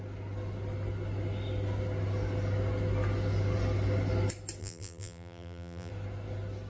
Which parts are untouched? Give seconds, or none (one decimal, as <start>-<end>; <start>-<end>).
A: 0.0-4.6; 5.9-6.7